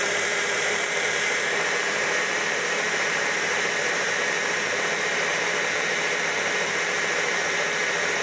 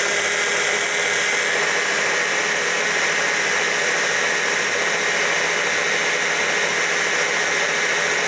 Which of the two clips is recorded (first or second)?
second